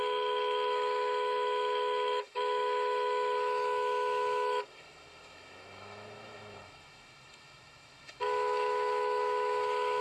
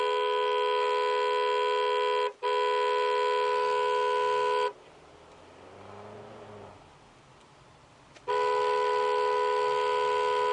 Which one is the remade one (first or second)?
first